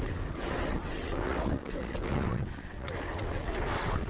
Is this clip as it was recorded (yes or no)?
no